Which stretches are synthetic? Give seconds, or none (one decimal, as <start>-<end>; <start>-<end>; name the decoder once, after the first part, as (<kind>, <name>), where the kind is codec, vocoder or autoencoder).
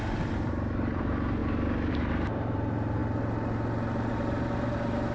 0.0-1.4 (vocoder, BigVGAN v2); 1.9-3.0; 4.1-5.1